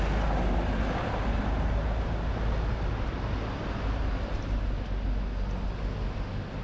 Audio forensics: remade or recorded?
recorded